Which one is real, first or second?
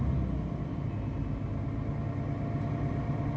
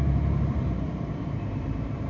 first